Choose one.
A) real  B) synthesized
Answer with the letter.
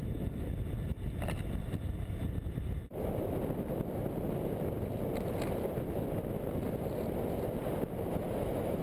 A